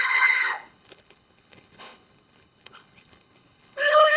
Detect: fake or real fake